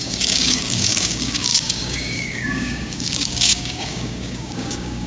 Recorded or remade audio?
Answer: remade